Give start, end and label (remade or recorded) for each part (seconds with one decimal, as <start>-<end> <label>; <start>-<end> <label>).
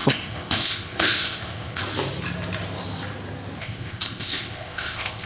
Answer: 0.0-1.8 remade; 1.8-3.6 recorded; 3.6-5.3 remade